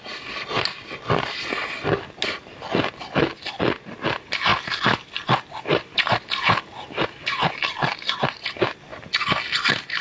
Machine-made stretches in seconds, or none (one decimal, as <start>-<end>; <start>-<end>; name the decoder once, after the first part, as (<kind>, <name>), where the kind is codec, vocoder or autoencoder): none